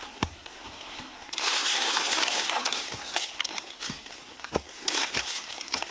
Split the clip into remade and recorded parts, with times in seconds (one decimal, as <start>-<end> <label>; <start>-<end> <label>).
0.0-5.9 remade